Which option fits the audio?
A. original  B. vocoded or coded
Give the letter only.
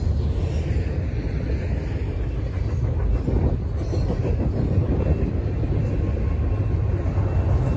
A